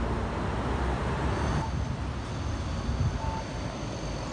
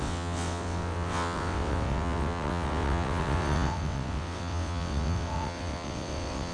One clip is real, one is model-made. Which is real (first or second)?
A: first